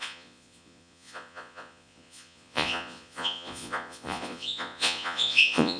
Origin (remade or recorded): remade